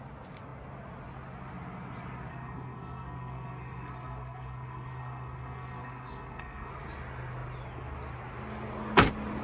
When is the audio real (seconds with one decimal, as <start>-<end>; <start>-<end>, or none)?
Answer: 0.0-2.3; 6.7-9.4